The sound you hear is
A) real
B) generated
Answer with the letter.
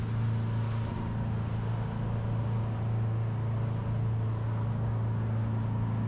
A